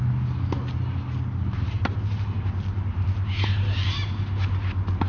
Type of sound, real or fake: real